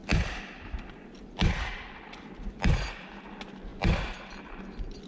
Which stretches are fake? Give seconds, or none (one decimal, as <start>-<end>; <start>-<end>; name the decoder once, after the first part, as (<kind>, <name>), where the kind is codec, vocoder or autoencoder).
0.0-3.1 (vocoder, BigVGAN v2); 3.7-4.6